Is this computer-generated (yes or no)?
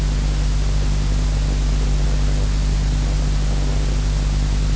no